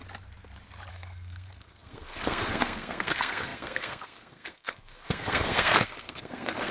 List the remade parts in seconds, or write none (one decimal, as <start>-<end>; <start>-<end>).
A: 0.9-6.7